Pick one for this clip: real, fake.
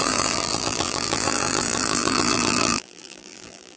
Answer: fake